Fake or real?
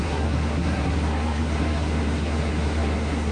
fake